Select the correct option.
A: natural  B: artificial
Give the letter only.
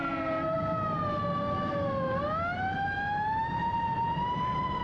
A